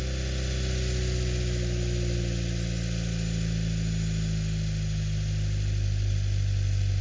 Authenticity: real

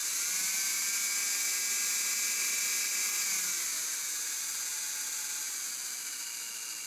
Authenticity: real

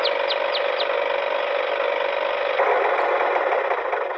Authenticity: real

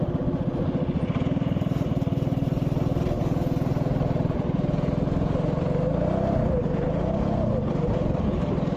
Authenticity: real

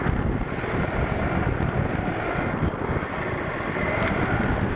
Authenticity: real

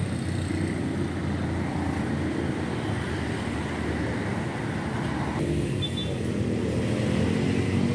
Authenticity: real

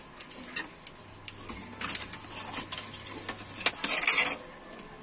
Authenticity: real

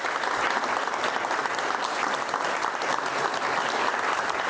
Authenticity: fake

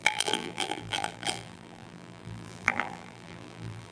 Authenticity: fake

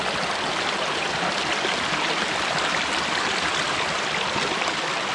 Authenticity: fake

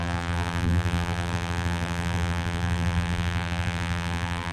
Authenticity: fake